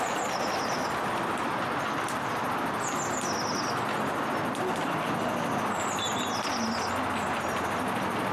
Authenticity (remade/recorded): recorded